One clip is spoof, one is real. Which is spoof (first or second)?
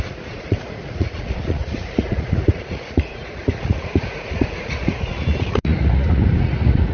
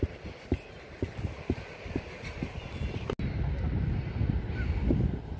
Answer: first